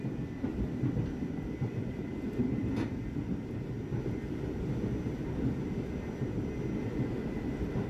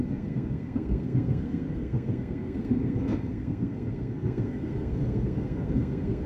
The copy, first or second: second